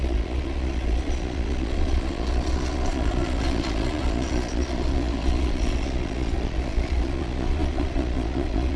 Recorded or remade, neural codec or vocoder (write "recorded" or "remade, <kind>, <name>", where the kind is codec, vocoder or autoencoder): remade, vocoder, Vocos